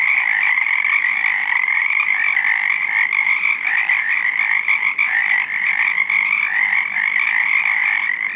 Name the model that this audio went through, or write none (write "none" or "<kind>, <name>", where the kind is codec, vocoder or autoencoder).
none